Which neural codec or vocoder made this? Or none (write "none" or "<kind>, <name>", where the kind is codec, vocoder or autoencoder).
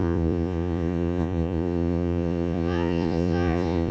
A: vocoder, Vocos